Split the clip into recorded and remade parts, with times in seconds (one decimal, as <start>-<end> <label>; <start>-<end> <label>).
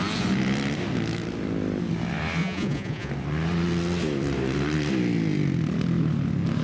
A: 0.0-2.4 recorded; 2.4-3.1 remade; 3.1-6.6 recorded